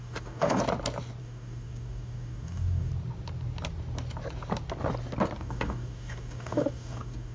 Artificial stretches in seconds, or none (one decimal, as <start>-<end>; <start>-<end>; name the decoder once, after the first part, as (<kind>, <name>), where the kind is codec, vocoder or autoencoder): 0.0-0.6 (codec, DAC); 1.2-2.9; 5.4-7.3